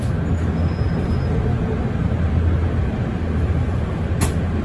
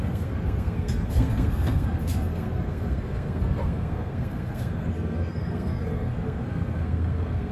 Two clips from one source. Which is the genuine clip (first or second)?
first